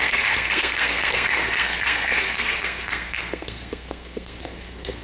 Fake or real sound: fake